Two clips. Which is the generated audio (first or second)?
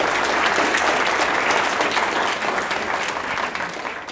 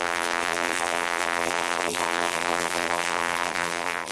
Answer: second